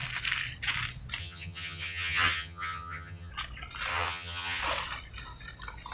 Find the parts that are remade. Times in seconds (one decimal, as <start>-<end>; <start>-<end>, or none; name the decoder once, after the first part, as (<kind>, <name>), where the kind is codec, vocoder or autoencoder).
1.2-3.3 (vocoder, HiFi-GAN); 3.9-4.6